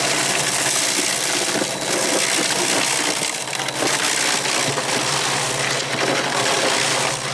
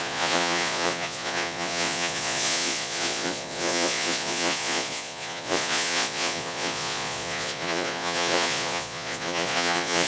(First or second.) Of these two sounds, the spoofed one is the second